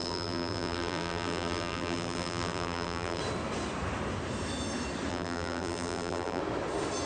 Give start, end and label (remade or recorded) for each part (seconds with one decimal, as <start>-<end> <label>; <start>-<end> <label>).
0.0-3.2 remade; 3.2-5.1 recorded; 5.1-6.4 remade; 6.4-7.1 recorded